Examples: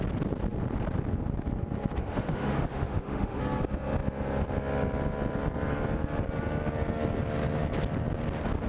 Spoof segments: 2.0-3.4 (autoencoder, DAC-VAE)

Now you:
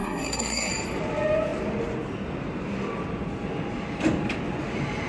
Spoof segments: 0.0-0.7 (codec, SNAC)

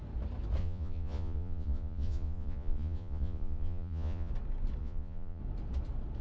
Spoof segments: 0.6-4.3 (vocoder, Vocos); 4.8-5.4

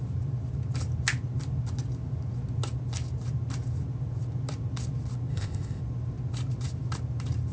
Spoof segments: 5.3-5.8 (codec, ZipCodec)